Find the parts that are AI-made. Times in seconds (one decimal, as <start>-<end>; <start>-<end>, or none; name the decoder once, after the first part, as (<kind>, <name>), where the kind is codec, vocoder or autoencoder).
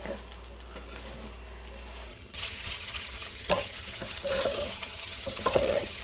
2.1-6.0 (vocoder, HiFi-GAN)